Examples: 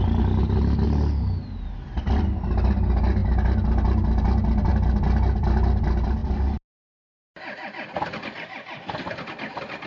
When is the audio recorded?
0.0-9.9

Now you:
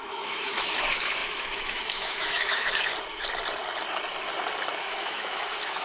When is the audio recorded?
2.9-4.8

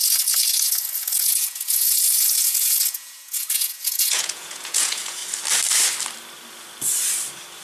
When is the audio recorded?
5.2-7.6

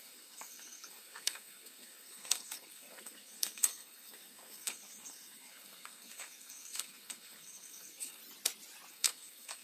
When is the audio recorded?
8.2-8.9